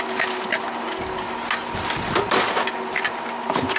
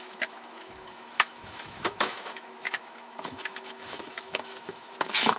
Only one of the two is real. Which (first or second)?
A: first